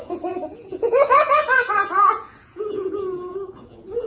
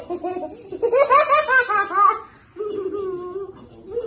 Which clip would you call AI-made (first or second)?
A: first